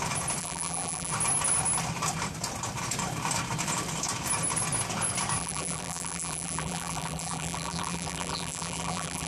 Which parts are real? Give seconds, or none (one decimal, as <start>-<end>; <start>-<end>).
0.0-0.4; 1.1-5.4